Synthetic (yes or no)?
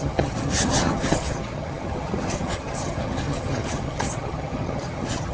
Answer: yes